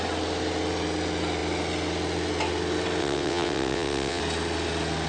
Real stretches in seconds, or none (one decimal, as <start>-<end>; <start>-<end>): 0.0-3.0; 4.2-5.1